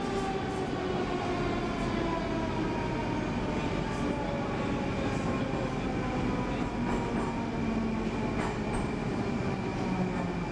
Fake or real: real